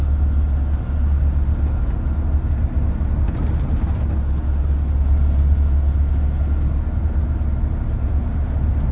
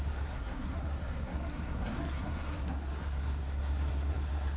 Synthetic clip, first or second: second